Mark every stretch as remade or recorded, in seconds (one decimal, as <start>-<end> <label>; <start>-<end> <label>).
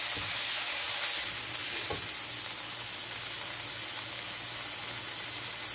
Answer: 0.0-5.7 recorded